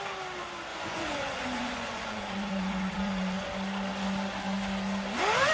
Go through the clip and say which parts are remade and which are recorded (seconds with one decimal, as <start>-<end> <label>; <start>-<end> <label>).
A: 0.0-0.7 recorded; 0.7-3.5 remade; 3.5-5.5 recorded